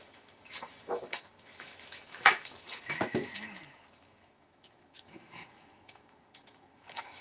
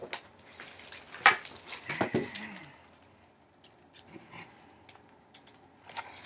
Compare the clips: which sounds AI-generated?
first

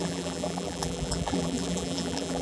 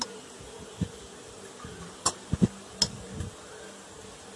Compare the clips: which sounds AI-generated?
first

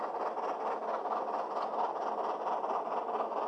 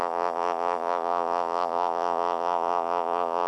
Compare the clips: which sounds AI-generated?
second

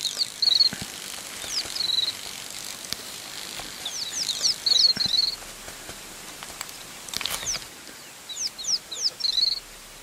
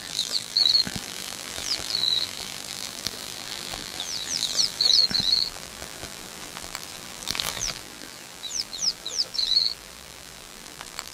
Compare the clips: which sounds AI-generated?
second